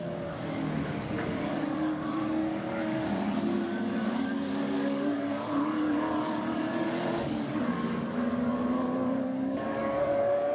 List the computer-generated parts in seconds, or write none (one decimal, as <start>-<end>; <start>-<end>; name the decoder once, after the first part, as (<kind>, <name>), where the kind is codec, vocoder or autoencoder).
0.0-10.5 (codec, DAC)